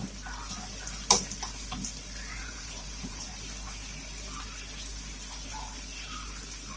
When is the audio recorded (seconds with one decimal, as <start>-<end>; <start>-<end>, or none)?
0.0-2.4; 3.3-6.8